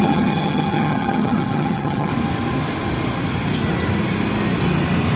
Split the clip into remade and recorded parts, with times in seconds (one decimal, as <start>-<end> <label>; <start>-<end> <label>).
0.0-2.1 remade; 2.1-5.2 recorded